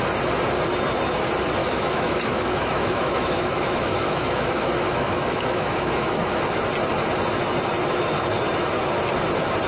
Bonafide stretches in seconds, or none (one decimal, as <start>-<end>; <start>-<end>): 0.0-1.6; 6.4-9.7